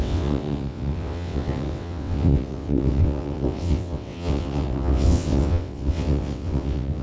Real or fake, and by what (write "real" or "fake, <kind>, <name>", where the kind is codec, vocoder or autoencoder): fake, vocoder, WaveNeXt